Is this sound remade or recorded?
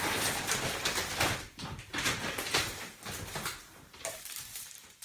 remade